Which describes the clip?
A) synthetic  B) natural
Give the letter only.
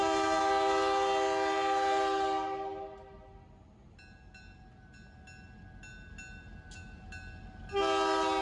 B